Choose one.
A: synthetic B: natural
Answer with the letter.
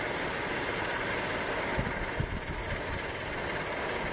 B